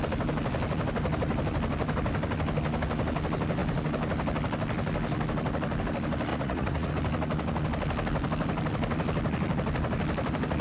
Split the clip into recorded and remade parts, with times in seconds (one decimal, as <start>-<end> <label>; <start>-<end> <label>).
0.0-6.3 recorded; 6.3-6.9 remade; 6.9-10.6 recorded